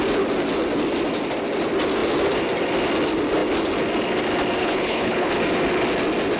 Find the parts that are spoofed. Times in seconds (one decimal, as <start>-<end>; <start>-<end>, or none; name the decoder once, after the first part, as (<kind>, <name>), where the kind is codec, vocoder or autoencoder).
4.6-5.3 (codec, HILCodec)